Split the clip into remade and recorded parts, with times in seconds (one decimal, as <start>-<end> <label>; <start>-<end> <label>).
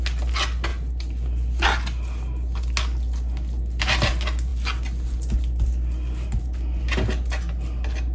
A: 0.0-8.1 recorded